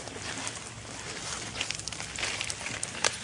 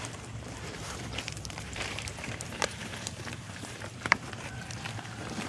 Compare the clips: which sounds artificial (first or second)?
second